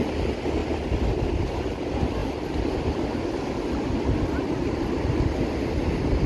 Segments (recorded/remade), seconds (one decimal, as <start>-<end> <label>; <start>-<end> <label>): 0.0-6.3 recorded